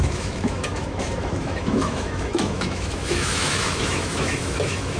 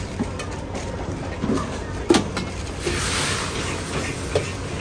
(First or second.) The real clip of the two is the second